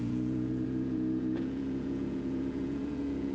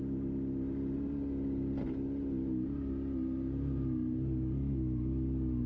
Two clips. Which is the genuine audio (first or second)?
second